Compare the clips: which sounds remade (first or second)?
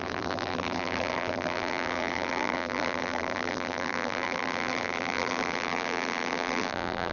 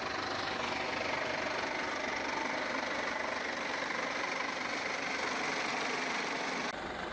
first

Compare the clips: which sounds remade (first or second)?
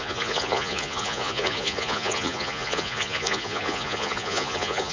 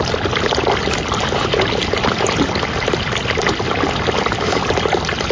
first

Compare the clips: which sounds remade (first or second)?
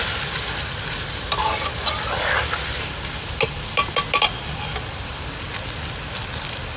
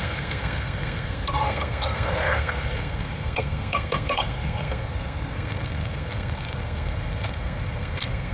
second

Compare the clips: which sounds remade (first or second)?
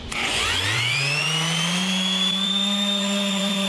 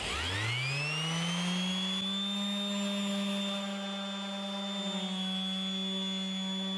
first